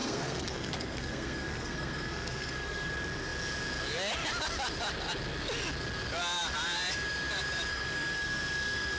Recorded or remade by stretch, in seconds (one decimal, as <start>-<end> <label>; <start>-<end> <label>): 0.0-2.9 remade; 2.9-7.7 recorded; 7.7-9.0 remade